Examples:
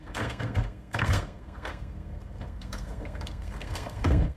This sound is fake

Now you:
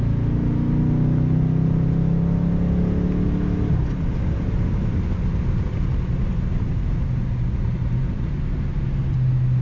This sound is real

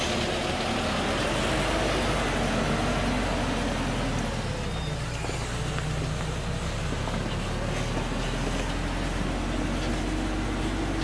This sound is real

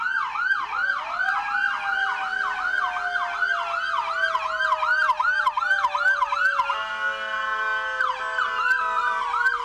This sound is real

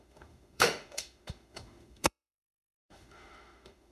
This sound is fake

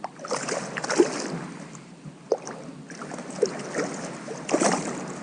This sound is real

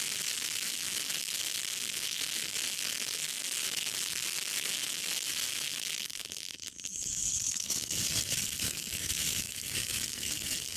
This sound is fake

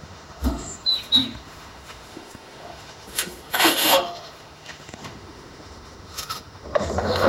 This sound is fake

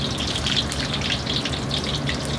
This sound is real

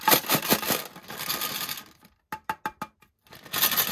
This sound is real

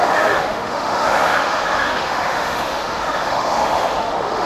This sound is fake